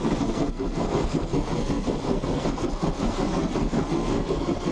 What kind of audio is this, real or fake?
fake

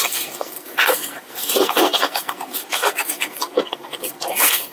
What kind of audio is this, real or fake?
fake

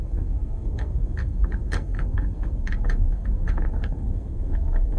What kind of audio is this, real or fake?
fake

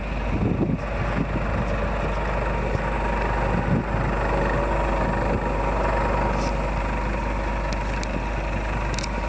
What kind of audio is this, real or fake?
real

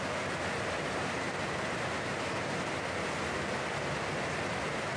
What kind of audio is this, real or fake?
real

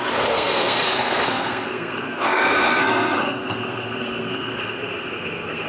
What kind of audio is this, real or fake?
fake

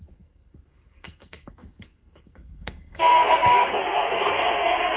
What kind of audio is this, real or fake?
fake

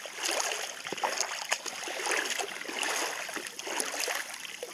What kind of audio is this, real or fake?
real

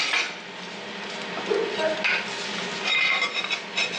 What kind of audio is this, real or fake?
real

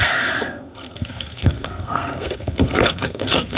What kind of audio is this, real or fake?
fake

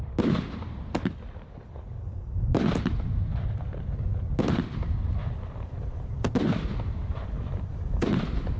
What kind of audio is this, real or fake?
real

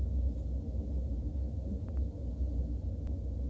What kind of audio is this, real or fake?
real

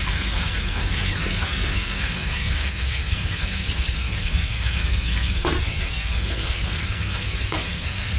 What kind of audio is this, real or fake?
fake